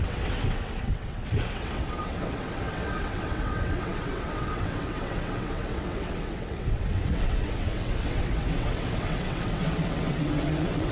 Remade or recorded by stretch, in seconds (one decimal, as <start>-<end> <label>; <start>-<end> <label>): 0.0-10.9 remade